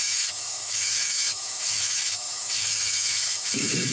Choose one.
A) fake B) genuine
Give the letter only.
A